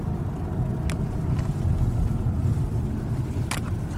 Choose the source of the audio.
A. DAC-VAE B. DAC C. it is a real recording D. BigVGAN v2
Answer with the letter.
C